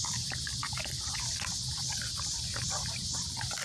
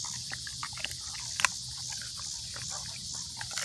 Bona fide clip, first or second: second